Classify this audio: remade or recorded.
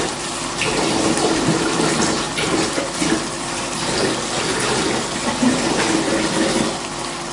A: recorded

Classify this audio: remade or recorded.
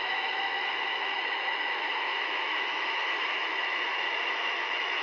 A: remade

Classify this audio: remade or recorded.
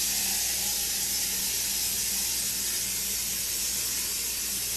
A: recorded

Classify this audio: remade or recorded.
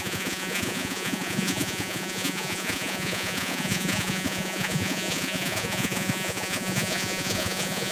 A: remade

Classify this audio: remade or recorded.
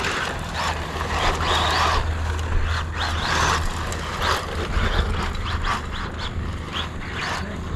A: recorded